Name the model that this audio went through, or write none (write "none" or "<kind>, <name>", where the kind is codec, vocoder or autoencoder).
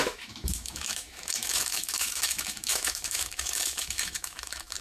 autoencoder, DAC-VAE